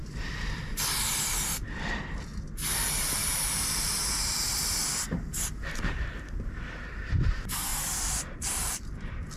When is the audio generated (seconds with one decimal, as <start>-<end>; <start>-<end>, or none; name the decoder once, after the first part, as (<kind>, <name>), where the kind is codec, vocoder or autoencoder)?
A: 0.0-2.3 (vocoder, BigVGAN v2); 4.2-7.7; 8.4-9.4

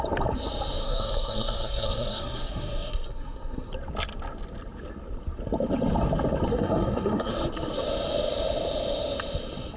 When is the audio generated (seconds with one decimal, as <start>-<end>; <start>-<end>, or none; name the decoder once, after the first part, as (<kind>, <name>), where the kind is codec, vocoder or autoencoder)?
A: 0.8-3.7 (codec, SNAC); 6.5-7.3

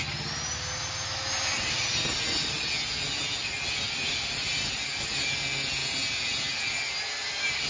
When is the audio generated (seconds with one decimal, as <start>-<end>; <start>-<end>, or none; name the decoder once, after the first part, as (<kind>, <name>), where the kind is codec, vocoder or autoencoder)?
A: none

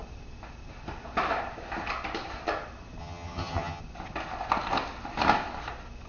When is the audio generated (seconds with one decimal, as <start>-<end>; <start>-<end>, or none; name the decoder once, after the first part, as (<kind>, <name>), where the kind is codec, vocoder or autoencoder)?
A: 3.0-3.8 (vocoder, HiFi-GAN)

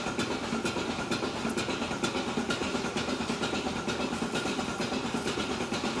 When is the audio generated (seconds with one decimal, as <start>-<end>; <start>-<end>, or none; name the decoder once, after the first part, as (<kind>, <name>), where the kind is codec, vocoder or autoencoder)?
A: none

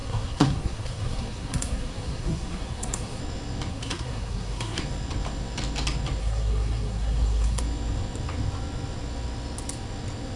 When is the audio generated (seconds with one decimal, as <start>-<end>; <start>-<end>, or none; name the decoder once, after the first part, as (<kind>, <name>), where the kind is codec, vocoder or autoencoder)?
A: 0.0-3.2 (codec, SNAC); 3.7-4.8; 6.2-7.6